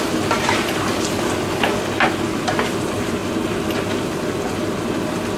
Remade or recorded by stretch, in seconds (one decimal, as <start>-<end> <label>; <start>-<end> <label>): 0.0-5.4 recorded